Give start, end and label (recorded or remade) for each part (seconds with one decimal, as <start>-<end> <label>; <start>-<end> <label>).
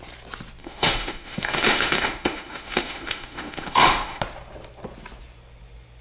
0.0-0.6 recorded; 0.6-4.2 remade; 4.2-6.0 recorded